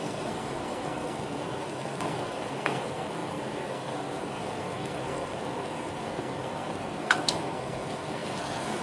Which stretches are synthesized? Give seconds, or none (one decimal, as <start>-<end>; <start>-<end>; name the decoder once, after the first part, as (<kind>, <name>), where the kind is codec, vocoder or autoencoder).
0.0-8.8 (codec, SNAC)